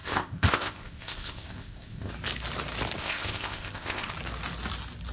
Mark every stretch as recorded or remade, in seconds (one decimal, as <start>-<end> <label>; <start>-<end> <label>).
0.0-2.1 remade; 2.1-3.0 recorded; 3.0-4.1 remade; 4.1-5.1 recorded